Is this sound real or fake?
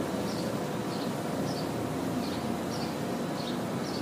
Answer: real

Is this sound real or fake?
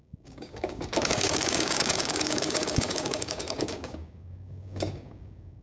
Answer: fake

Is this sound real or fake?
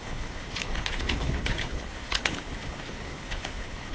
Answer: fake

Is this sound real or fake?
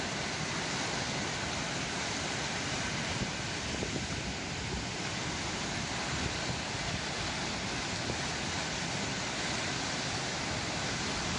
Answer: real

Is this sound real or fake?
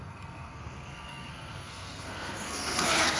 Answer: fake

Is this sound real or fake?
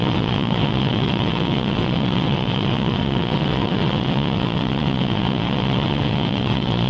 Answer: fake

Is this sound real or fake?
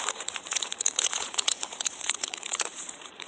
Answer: fake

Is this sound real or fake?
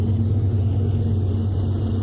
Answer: real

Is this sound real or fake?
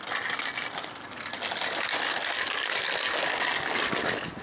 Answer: real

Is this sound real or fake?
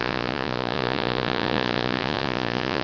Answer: fake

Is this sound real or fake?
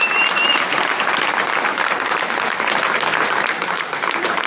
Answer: fake